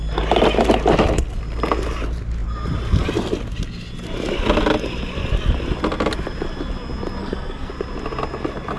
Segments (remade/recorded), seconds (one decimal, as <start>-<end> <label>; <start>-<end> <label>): 0.0-7.2 recorded; 7.2-7.7 remade; 7.7-8.8 recorded